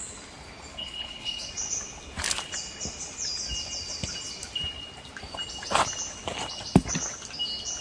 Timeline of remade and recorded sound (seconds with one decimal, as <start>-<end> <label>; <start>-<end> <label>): 0.0-0.7 recorded; 0.7-1.5 remade; 1.5-7.8 recorded